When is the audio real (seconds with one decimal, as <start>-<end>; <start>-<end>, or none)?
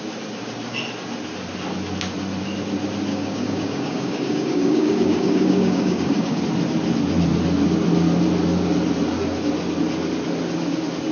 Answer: 0.0-3.1; 6.4-11.1